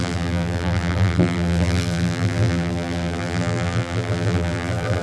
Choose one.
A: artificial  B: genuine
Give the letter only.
A